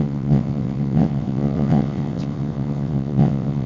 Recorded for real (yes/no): no